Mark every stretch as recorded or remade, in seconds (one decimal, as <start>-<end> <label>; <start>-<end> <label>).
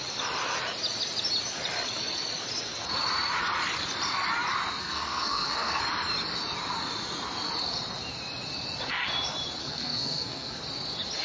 0.0-4.8 recorded; 4.8-5.8 remade; 5.8-9.6 recorded; 9.6-10.6 remade; 10.6-11.2 recorded